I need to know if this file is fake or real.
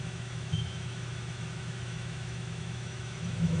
fake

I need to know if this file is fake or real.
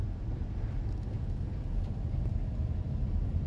real